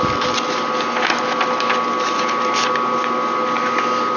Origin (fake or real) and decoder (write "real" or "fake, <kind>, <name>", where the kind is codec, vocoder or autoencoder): real